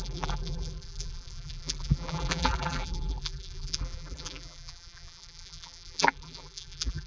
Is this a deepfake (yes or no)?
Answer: yes